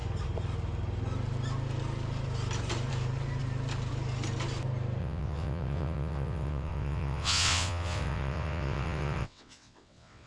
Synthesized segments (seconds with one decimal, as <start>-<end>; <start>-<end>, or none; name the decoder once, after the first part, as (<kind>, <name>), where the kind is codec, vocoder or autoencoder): 5.0-10.3 (vocoder, WaveNeXt)